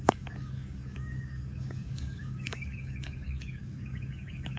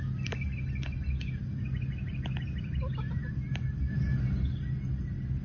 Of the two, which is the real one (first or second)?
second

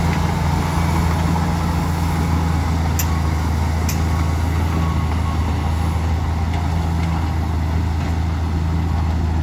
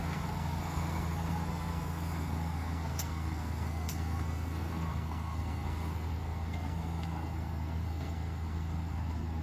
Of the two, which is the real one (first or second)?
first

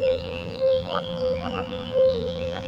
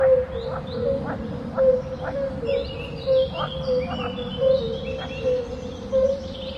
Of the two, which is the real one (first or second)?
second